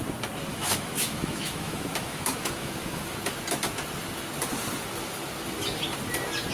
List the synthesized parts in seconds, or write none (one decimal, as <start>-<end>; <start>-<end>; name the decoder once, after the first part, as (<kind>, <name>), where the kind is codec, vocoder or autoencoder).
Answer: 0.5-3.2 (autoencoder, DAC-VAE)